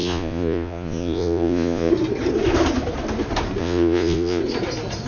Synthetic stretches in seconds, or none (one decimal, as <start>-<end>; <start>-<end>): 0.0-1.9; 3.6-4.4